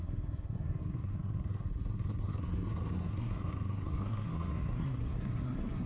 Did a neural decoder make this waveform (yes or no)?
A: yes